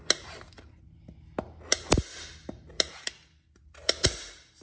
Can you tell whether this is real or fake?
real